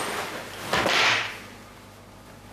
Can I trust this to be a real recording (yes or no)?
yes